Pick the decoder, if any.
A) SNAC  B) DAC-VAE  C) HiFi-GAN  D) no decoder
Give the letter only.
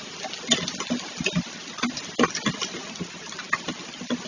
D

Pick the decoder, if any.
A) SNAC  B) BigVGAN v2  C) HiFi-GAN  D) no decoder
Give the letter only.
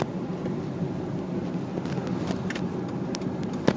D